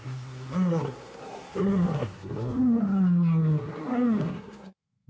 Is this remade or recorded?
remade